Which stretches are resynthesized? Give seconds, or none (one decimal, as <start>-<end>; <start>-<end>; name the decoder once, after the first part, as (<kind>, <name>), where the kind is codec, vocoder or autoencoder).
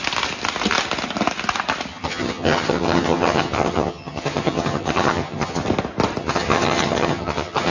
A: 1.9-5.6 (vocoder, HiFi-GAN); 6.2-7.7